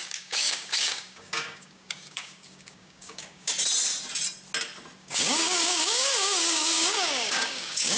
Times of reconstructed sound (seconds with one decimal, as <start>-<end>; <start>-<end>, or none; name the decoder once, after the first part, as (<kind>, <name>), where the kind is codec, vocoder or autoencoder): 0.0-3.5 (codec, DAC); 5.0-8.0